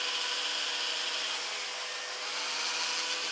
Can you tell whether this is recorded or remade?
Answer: recorded